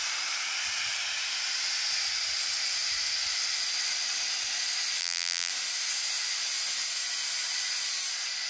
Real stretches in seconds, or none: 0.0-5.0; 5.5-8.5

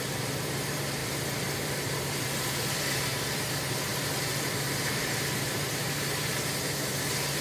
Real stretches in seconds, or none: none

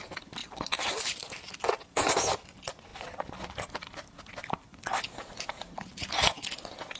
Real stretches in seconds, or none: 0.0-0.4; 1.6-7.0

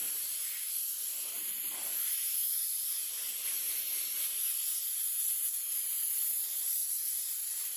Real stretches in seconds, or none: none